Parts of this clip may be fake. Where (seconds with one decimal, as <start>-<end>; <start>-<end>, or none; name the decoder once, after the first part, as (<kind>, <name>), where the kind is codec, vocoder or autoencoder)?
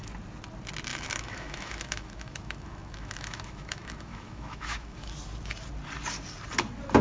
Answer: 0.9-5.1 (autoencoder, DAC-VAE)